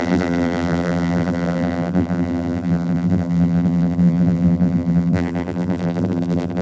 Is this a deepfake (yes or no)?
yes